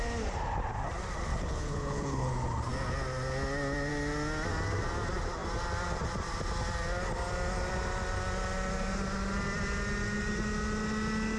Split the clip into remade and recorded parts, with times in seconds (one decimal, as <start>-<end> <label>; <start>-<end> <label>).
0.0-1.3 recorded; 1.3-2.3 remade; 2.3-11.4 recorded